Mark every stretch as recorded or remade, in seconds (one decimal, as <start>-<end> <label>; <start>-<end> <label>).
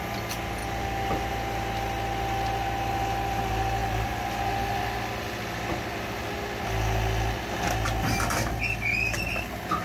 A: 0.0-9.8 recorded